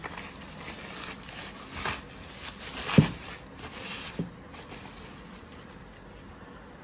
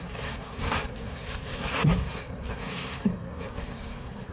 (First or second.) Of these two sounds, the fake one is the second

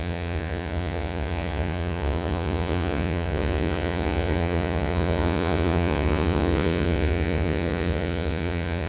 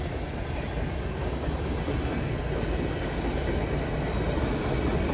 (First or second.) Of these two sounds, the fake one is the first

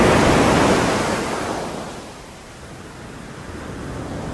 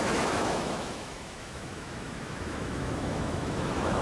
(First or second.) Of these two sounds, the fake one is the second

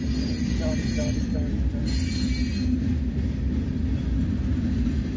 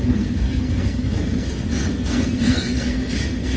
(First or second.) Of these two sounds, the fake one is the second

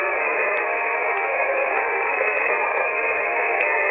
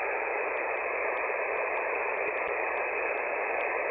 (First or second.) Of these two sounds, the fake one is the first